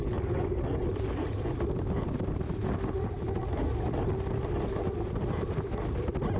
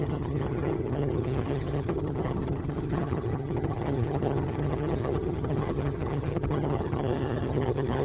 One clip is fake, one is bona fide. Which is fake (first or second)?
second